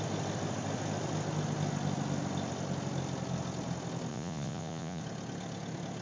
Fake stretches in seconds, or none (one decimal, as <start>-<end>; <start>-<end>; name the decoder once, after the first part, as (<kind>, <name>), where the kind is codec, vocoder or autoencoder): 4.1-5.0 (vocoder, Vocos)